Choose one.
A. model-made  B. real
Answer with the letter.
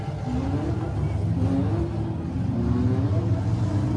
B